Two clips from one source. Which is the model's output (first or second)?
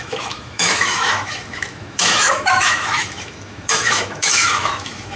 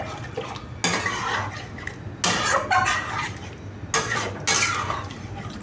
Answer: first